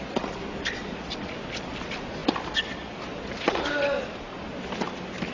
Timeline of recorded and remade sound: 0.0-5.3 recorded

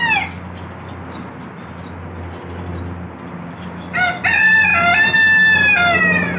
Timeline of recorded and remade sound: 0.0-6.4 recorded

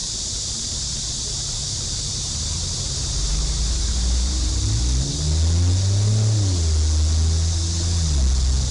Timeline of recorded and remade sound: 0.0-0.8 remade; 0.8-1.6 recorded; 1.6-4.5 remade; 4.5-8.7 recorded

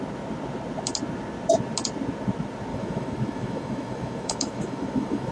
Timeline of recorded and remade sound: 0.0-2.7 recorded; 2.7-5.3 remade

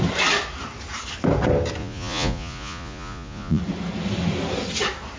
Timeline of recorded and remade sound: 0.0-1.8 recorded; 1.8-3.6 remade; 3.6-5.2 recorded